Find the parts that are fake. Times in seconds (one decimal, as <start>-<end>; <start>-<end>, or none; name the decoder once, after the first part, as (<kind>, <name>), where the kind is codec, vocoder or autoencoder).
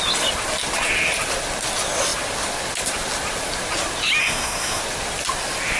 4.2-4.8 (codec, SNAC)